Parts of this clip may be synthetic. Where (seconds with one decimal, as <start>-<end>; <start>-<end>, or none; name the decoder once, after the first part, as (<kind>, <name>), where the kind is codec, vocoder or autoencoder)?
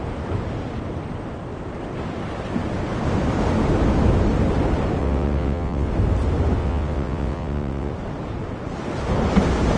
5.0-5.9 (vocoder, WaveNeXt); 6.6-7.9